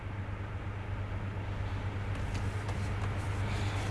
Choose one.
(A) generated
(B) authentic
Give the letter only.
B